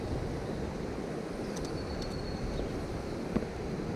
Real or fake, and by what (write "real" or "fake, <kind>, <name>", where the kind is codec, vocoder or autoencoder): real